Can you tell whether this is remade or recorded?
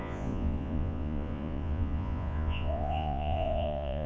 remade